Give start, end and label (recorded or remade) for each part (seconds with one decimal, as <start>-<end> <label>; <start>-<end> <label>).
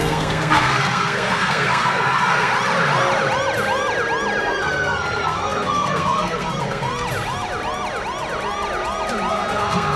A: 0.0-2.5 remade; 2.5-4.4 recorded; 4.4-6.9 remade; 6.9-9.3 recorded; 9.3-10.0 remade